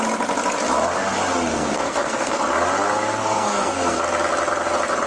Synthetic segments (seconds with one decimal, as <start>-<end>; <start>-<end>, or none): 1.5-2.4; 3.2-4.0